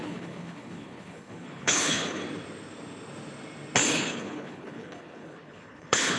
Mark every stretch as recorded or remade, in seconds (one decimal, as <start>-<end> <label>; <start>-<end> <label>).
0.0-2.2 remade; 2.2-3.9 recorded; 3.9-6.2 remade